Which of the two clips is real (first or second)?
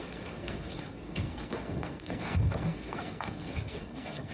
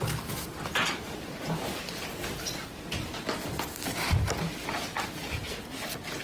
second